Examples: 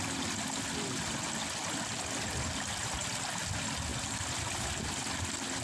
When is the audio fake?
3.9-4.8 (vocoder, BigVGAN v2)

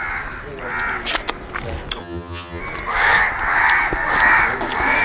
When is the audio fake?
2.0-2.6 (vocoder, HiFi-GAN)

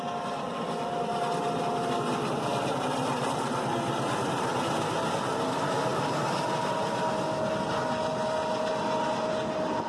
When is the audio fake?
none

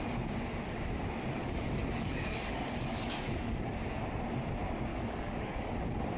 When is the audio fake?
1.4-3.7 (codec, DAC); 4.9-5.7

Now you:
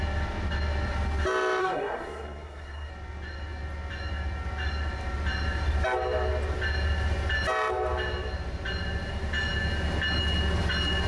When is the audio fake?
1.6-2.9 (codec, SNAC)